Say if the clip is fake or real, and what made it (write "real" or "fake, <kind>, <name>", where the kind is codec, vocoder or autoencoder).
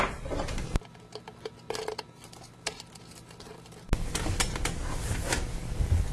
real